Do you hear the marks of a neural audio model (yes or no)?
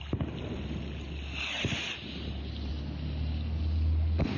no